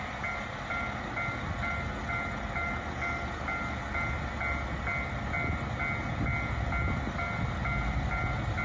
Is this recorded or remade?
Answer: recorded